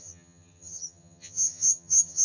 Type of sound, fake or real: fake